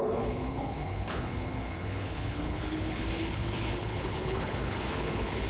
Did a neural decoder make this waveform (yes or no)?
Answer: yes